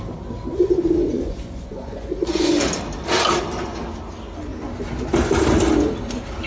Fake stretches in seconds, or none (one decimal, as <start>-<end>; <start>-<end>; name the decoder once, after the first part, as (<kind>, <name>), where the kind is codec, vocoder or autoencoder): 0.5-2.5 (vocoder, Vocos)